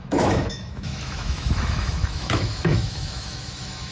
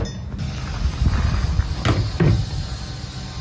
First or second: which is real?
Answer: second